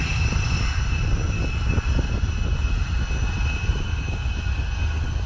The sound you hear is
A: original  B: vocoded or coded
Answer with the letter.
A